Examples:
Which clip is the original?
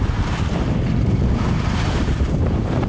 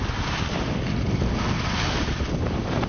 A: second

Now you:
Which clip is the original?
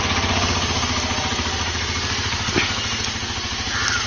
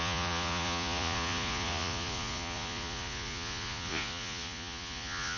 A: first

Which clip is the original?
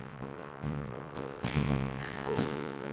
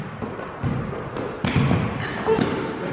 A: second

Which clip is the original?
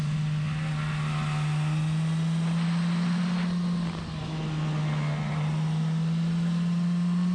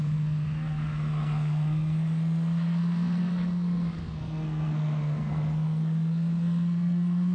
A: first